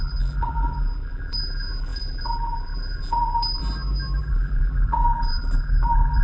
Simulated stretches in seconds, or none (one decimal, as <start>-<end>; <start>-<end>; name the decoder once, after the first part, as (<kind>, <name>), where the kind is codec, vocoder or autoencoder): 0.0-3.6 (vocoder, BigVGAN v2); 4.2-6.2